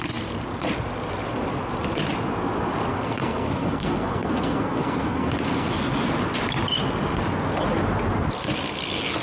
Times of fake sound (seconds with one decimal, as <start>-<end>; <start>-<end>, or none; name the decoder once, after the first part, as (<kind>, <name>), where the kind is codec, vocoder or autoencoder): 2.9-5.7 (codec, SNAC)